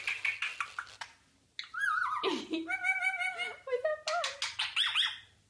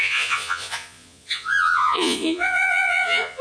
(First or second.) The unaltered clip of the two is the first